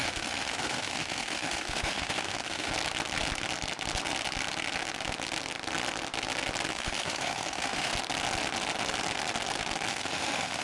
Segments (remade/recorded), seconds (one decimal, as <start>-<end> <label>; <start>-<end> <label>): 0.0-2.7 remade; 2.7-6.7 recorded; 6.7-7.9 remade; 7.9-9.9 recorded; 9.9-10.6 remade

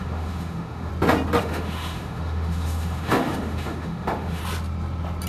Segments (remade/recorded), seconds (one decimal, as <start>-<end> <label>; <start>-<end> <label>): 0.0-0.9 remade; 0.9-1.4 recorded; 1.4-4.4 remade; 4.4-5.3 recorded

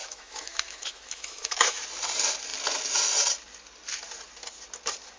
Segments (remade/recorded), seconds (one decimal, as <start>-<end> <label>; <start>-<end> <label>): 0.0-1.8 remade; 1.8-5.2 recorded